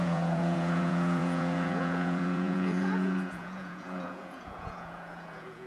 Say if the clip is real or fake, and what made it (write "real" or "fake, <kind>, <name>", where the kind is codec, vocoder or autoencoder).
fake, vocoder, Vocos